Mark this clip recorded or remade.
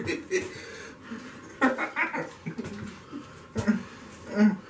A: recorded